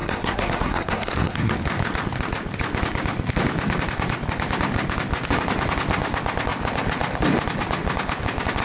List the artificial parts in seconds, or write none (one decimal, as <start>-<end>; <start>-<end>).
0.0-1.5